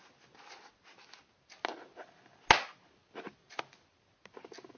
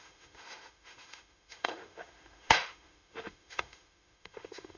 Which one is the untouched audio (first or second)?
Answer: first